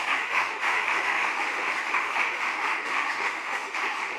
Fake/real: fake